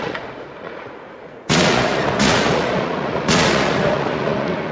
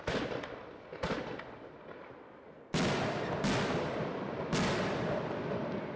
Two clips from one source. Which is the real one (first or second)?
second